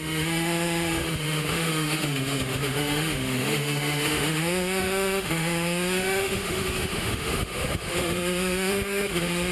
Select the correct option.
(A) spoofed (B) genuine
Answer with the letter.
A